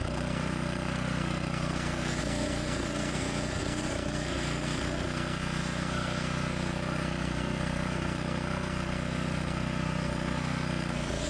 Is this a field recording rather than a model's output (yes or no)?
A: no